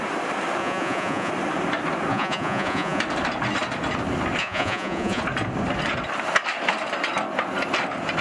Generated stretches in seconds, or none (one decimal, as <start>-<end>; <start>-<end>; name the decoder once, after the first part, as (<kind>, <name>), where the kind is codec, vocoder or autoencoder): 0.6-1.3 (vocoder, Vocos); 2.1-3.0; 4.4-5.2